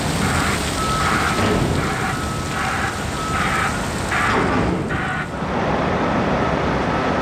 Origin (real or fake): real